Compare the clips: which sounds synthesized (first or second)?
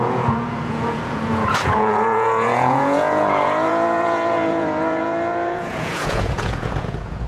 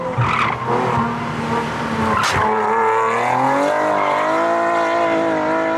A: first